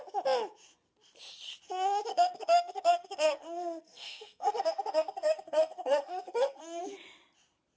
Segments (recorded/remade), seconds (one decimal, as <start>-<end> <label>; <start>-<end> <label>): 0.0-2.1 recorded; 2.1-6.8 remade; 6.8-7.8 recorded